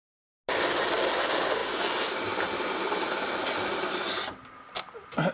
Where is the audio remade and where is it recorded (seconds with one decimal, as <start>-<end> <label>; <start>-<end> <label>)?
0.0-5.3 recorded